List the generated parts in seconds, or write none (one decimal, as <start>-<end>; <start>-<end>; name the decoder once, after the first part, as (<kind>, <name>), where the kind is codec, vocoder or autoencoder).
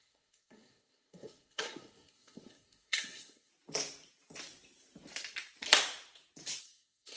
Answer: 0.0-3.5 (codec, SNAC); 6.6-7.2